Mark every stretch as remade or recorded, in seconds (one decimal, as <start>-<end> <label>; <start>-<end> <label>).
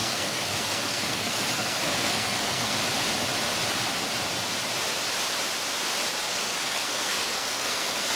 0.0-2.8 remade; 2.8-6.2 recorded; 6.2-8.2 remade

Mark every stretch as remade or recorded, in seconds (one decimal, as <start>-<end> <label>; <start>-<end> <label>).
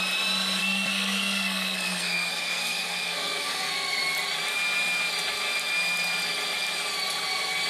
0.0-0.6 recorded; 0.6-4.0 remade; 4.0-7.7 recorded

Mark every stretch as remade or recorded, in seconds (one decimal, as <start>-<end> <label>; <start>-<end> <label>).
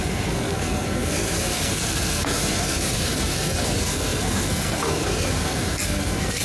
0.0-6.4 remade